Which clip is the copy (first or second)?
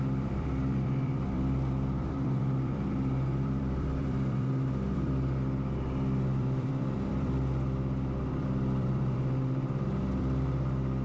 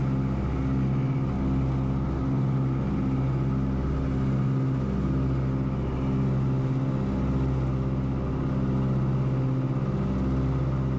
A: first